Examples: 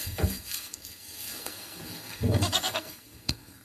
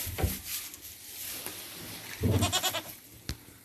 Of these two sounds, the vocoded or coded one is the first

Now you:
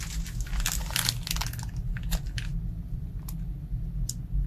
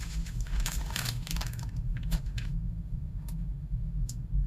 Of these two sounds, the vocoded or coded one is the second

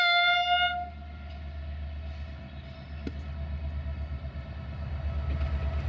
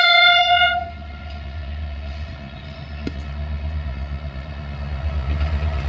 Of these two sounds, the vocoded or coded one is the second